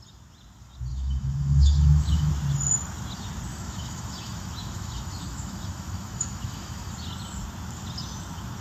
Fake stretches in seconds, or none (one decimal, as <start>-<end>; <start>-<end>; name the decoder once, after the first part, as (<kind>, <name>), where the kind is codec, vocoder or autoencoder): 0.9-2.3 (autoencoder, DAC-VAE); 3.5-6.9

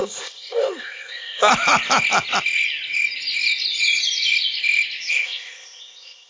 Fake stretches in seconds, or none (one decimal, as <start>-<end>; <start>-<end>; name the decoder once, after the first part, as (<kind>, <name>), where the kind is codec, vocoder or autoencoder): 0.0-1.5 (codec, ZipCodec); 5.1-6.3

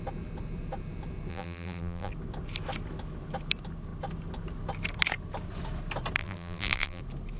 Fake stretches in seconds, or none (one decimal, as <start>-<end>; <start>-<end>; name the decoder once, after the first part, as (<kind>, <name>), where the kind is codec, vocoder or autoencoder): 1.3-2.1 (vocoder, BigVGAN v2); 6.2-7.0